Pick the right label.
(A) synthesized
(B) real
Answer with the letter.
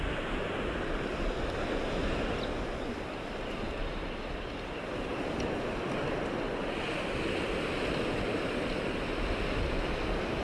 B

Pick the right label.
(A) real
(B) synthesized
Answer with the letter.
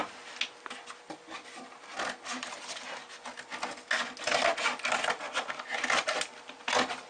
A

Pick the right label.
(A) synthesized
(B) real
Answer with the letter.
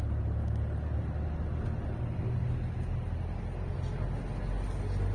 B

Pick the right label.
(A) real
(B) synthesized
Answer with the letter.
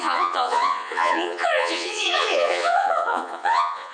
B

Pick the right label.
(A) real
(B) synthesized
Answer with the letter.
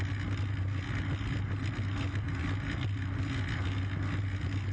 A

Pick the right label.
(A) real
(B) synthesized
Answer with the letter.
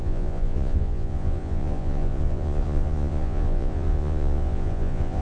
B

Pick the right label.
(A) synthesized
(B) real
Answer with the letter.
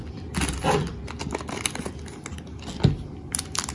B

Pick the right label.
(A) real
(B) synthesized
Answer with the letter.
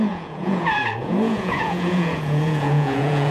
B